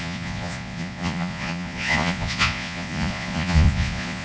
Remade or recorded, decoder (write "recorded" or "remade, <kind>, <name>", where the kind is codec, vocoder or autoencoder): remade, vocoder, Vocos